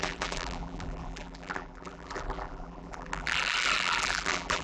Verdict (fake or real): fake